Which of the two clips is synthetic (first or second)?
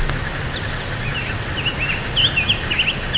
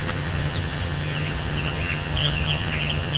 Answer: second